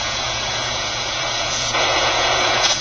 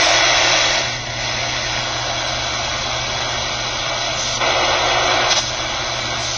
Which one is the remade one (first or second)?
first